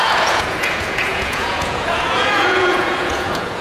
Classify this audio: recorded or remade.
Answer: remade